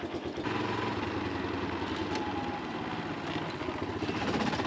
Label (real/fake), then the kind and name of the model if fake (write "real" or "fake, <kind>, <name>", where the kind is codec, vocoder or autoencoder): real